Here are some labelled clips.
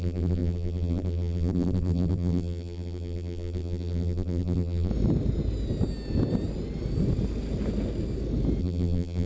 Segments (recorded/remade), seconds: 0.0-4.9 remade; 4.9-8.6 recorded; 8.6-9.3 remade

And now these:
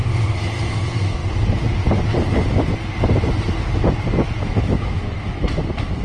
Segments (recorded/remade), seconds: 0.0-0.7 recorded; 0.7-1.2 remade; 1.2-4.4 recorded; 4.4-6.0 remade

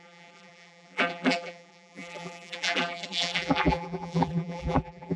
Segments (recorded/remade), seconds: 0.0-5.2 remade

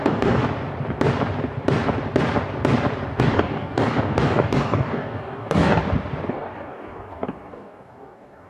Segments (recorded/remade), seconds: 0.0-0.4 remade; 0.4-3.2 recorded; 3.2-5.8 remade; 5.8-6.3 recorded; 6.3-8.5 remade

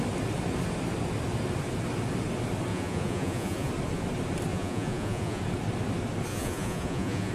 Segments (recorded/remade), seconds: 0.0-2.7 recorded; 2.7-3.7 remade; 3.7-4.5 recorded; 4.5-5.4 remade; 5.4-6.3 recorded; 6.3-7.3 remade

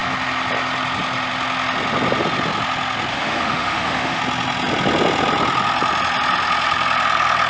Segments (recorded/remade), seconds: 0.0-3.1 recorded; 3.1-4.2 remade; 4.2-7.5 recorded

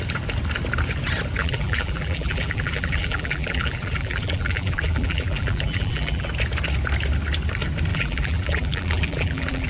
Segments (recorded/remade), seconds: 0.0-1.4 recorded; 1.4-6.3 remade; 6.3-7.9 recorded; 7.9-9.7 remade

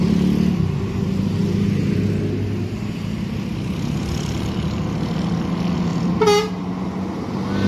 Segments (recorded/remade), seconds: 0.0-7.7 recorded